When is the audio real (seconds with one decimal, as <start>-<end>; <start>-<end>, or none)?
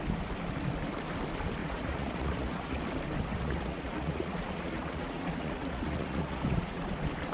0.0-1.6; 2.8-3.3; 6.8-7.3